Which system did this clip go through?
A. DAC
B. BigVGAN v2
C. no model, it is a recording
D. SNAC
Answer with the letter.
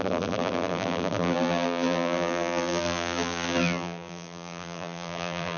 B